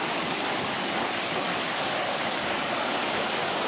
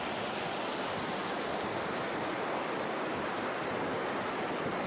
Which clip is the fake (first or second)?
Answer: first